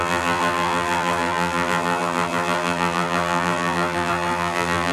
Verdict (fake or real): fake